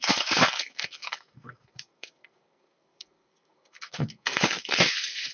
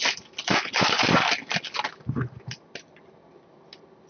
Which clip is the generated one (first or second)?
first